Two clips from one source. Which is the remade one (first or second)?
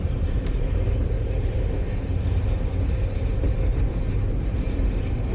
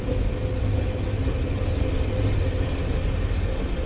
first